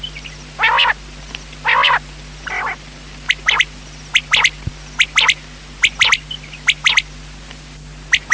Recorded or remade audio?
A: recorded